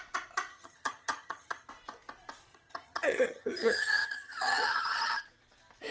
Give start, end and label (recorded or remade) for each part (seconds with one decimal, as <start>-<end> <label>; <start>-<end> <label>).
0.0-0.5 recorded; 0.5-1.7 remade; 1.7-2.5 recorded; 2.5-5.2 remade; 5.2-5.9 recorded